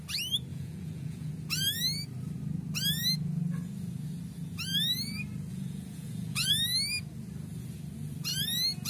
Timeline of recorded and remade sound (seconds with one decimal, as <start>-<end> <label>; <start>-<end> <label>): 0.0-0.5 recorded; 0.5-1.3 remade; 1.3-5.5 recorded; 5.5-6.5 remade; 6.5-8.9 recorded